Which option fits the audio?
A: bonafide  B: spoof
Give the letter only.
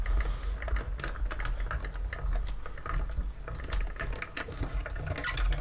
A